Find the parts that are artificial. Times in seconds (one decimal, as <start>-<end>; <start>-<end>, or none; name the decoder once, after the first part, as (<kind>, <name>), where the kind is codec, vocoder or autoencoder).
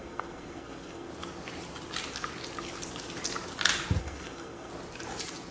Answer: 0.0-1.1 (codec, SNAC); 4.0-4.7